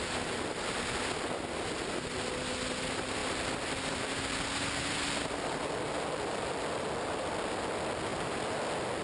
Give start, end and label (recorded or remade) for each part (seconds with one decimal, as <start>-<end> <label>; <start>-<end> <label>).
0.0-9.0 recorded